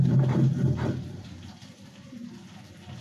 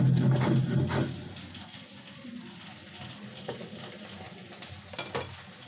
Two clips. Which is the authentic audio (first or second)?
second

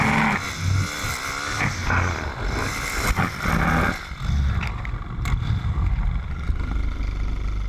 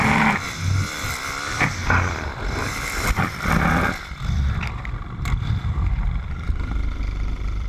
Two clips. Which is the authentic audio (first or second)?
first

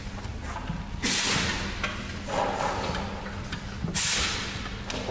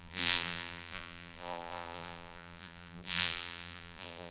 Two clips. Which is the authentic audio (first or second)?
first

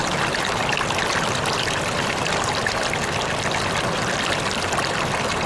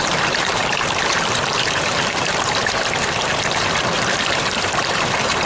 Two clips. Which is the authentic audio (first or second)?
first